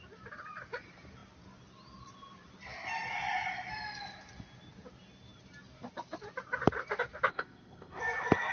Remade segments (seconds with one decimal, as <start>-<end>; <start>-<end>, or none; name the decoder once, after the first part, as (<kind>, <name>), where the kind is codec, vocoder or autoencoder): 7.3-8.0 (codec, ZipCodec)